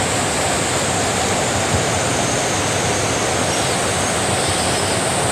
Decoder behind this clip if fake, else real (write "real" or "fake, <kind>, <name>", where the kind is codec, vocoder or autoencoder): real